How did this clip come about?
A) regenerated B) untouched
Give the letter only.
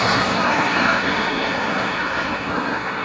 A